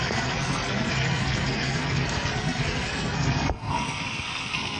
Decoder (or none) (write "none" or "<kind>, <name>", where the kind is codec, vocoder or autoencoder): codec, SNAC